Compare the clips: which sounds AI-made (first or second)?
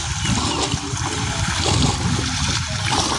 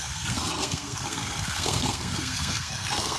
second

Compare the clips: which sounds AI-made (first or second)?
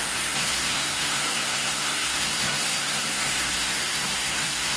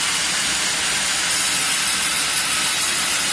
first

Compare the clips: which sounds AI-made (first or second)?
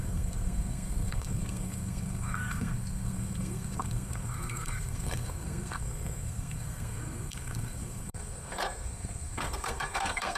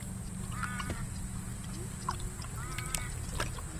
first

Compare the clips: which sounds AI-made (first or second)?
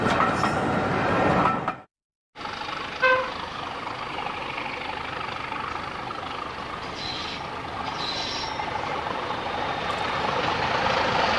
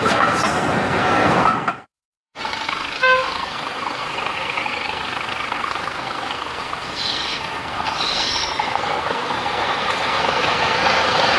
second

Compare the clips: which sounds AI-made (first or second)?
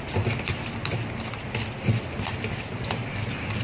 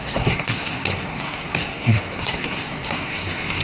second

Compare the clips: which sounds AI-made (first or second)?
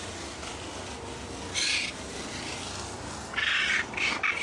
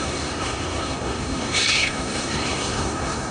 second